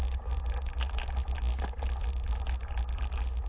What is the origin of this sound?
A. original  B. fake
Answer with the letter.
A